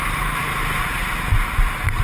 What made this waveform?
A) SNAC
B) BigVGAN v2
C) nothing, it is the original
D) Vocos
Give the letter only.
B